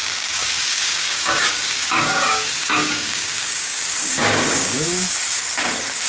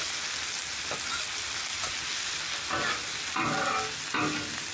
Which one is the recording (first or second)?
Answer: second